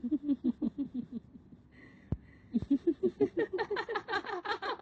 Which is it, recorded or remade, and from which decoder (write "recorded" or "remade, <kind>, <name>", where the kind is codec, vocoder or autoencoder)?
recorded